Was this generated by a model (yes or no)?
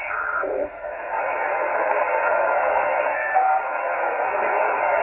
yes